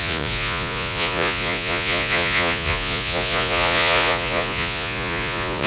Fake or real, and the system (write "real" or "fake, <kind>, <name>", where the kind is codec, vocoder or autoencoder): fake, vocoder, Vocos